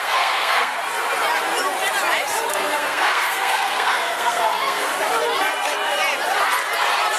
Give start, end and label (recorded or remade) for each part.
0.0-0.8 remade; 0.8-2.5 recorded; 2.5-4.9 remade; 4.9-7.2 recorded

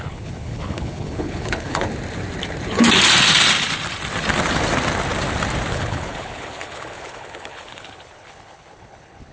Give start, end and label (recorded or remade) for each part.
0.0-1.9 remade; 1.9-5.7 recorded; 5.7-9.3 remade

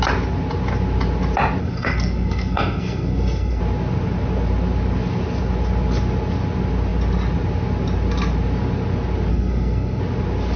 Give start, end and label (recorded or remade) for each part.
0.0-1.6 recorded; 1.6-3.6 remade; 3.6-9.3 recorded; 9.3-10.0 remade; 10.0-10.6 recorded

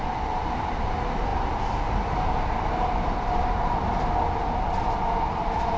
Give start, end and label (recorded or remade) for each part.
0.0-5.8 recorded

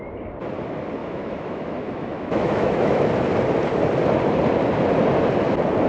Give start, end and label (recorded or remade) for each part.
0.0-1.0 recorded; 1.0-3.1 remade; 3.1-5.9 recorded

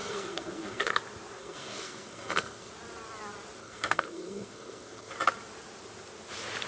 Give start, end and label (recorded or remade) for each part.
0.0-0.9 remade; 0.9-1.4 recorded; 1.4-2.7 remade; 2.7-3.6 recorded; 3.6-5.1 remade; 5.1-6.7 recorded

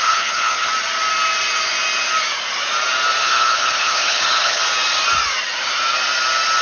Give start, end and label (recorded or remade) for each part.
0.0-0.7 remade; 0.7-3.2 recorded; 3.2-4.6 remade; 4.6-6.6 recorded

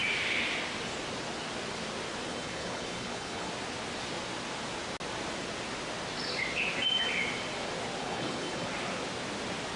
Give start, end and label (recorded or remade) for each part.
0.0-2.3 recorded; 2.3-3.5 remade; 3.5-8.0 recorded; 8.0-8.7 remade; 8.7-9.8 recorded